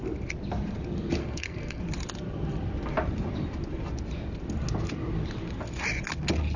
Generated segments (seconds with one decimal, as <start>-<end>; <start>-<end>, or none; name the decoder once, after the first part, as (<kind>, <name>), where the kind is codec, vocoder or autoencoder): 1.2-1.8 (codec, SNAC)